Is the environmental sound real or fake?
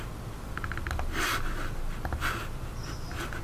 real